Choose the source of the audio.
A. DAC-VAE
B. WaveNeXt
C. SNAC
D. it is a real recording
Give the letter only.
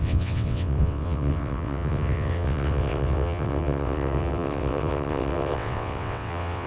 B